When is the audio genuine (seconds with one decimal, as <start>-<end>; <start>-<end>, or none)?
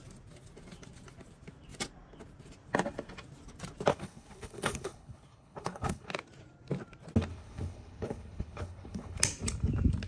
0.0-3.9; 6.1-7.3; 9.2-10.1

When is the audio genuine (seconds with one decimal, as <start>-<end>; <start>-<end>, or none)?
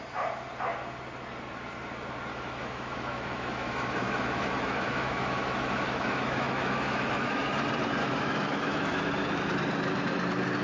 0.0-2.3; 7.5-8.0; 9.5-10.6